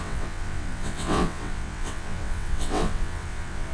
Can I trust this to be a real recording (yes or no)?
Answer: no